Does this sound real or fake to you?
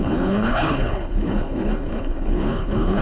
fake